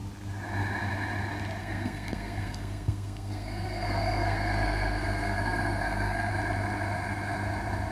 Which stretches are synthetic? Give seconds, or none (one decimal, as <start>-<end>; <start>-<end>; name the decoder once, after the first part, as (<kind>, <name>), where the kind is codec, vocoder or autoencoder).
1.6-6.3 (codec, SNAC)